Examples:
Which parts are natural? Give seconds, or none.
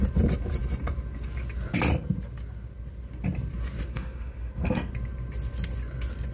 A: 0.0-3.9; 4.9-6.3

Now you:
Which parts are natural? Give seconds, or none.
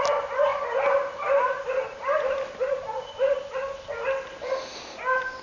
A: 0.0-5.4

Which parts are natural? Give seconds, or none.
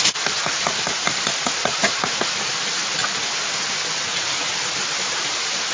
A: 0.0-5.7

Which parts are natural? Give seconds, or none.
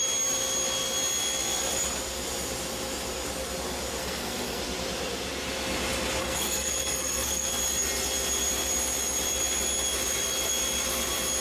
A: 0.0-4.0; 4.6-6.2; 7.5-11.4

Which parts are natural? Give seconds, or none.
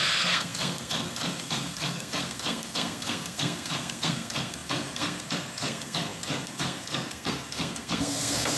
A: none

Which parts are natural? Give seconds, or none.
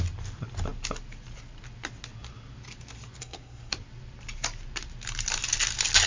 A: 0.0-3.2; 3.7-6.1